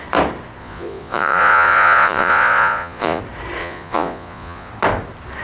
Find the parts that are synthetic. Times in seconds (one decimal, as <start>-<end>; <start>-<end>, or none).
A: 0.6-3.2; 3.6-4.7